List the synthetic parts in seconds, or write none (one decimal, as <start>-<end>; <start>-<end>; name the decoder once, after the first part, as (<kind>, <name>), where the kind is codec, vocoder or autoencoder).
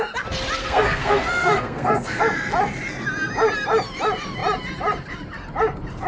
0.6-2.2 (codec, SNAC)